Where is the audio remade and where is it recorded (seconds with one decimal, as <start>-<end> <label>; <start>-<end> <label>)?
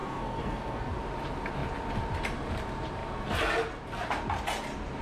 0.0-0.9 remade; 0.9-5.0 recorded